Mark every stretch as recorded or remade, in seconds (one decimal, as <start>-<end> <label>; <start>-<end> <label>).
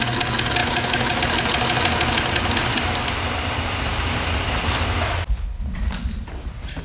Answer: 0.0-0.6 recorded; 0.6-1.2 remade; 1.2-6.8 recorded